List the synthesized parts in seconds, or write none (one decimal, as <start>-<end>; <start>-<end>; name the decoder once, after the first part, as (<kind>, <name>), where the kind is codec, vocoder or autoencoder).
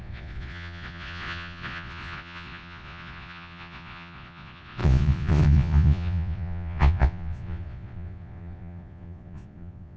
0.0-10.0 (vocoder, Vocos)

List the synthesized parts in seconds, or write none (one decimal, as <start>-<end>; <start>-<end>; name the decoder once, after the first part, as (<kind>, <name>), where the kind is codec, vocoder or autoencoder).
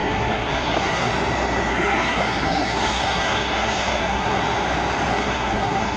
0.0-1.1 (codec, SNAC); 1.7-4.4; 5.1-6.0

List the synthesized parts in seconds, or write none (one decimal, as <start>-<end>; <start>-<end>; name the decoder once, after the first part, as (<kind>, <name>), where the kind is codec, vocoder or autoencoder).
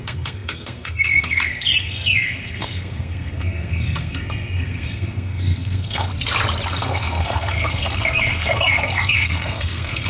0.0-6.1 (codec, SNAC); 6.7-10.1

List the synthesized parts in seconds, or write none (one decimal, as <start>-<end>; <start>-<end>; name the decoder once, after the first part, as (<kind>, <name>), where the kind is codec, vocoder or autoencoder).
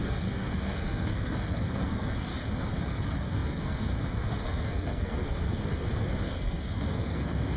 0.0-2.3 (codec, SNAC); 2.8-7.6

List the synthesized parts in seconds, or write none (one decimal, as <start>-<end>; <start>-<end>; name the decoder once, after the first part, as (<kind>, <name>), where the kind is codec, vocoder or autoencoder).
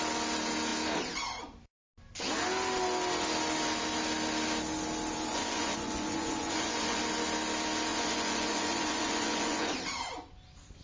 5.3-7.0 (vocoder, Vocos); 7.9-9.7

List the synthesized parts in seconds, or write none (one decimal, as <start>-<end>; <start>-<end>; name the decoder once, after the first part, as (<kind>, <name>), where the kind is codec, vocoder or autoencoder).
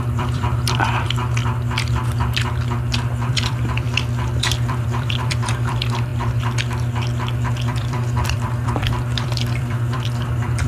0.0-1.4 (vocoder, BigVGAN v2); 3.3-6.1; 7.5-10.7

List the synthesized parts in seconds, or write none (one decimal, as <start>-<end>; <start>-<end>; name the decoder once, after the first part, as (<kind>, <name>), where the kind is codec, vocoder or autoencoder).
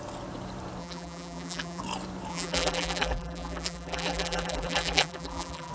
0.8-1.8 (vocoder, BigVGAN v2); 2.3-5.7